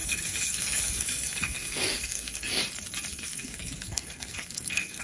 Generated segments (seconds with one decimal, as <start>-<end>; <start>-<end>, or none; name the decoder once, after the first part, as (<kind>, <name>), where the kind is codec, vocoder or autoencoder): 0.0-2.6 (codec, SNAC); 3.1-5.0